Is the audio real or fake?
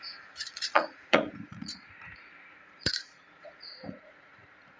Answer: fake